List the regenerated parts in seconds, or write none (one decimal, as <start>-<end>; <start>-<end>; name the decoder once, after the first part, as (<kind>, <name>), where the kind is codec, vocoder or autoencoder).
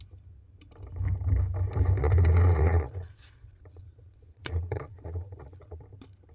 2.0-5.8 (vocoder, Vocos)